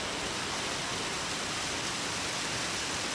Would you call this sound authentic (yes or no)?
yes